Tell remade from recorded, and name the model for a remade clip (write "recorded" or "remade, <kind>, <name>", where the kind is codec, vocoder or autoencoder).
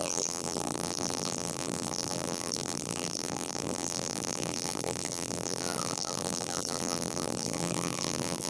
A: remade, vocoder, BigVGAN v2